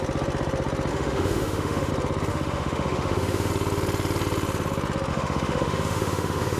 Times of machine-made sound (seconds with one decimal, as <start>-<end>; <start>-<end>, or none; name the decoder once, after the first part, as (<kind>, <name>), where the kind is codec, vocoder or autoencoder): 0.9-1.9 (autoencoder, DAC-VAE); 2.3-3.5; 5.1-6.6